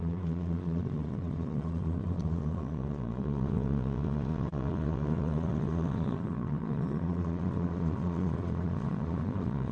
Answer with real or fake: fake